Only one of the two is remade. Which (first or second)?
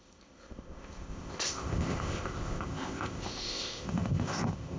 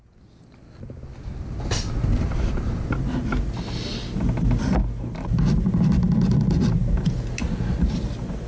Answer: first